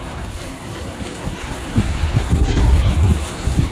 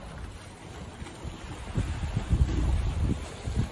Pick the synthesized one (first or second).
first